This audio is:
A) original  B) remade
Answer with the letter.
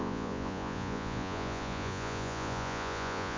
B